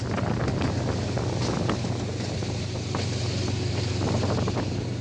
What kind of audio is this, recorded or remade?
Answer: recorded